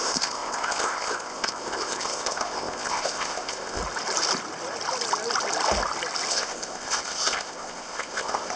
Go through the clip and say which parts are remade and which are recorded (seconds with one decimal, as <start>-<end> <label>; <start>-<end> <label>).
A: 0.0-3.8 remade; 3.8-6.3 recorded; 6.3-8.6 remade